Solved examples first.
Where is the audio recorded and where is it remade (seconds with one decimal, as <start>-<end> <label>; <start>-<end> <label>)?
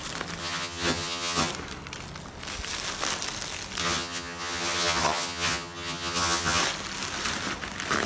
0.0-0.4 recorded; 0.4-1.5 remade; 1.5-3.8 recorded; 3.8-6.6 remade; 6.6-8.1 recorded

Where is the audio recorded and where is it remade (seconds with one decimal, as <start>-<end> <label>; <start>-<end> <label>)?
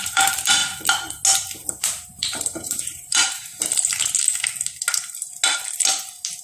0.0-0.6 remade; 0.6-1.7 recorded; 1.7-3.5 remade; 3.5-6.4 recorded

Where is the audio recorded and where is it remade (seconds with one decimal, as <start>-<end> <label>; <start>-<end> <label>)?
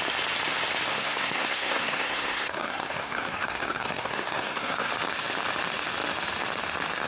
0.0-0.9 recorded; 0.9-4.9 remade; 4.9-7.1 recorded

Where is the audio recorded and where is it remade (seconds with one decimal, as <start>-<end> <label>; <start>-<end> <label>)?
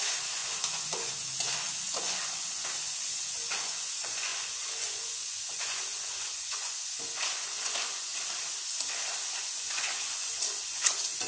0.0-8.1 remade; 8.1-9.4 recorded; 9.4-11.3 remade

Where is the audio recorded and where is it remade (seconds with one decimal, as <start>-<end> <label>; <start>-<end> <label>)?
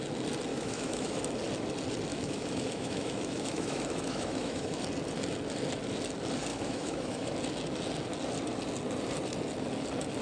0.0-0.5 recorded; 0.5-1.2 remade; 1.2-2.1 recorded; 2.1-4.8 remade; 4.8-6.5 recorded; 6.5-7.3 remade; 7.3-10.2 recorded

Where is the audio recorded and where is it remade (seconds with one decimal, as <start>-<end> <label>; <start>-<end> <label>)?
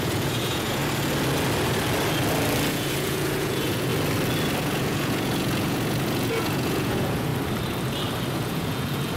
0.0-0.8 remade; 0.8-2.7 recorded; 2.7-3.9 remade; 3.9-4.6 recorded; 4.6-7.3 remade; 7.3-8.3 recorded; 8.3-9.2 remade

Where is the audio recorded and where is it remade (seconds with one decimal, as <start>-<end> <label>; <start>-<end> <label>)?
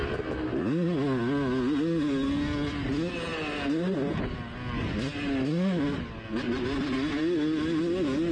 0.0-8.3 recorded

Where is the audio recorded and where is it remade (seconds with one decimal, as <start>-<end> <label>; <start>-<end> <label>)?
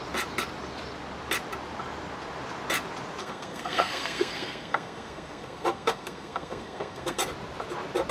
0.0-3.2 recorded; 3.2-7.2 remade; 7.2-8.1 recorded